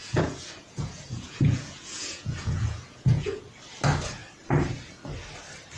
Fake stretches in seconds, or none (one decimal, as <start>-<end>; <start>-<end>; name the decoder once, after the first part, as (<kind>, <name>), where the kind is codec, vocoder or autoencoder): 0.0-3.5 (vocoder, Vocos)